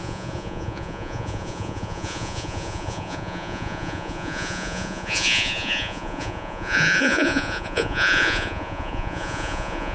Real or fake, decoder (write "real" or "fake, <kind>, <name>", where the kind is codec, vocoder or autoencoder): fake, vocoder, Vocos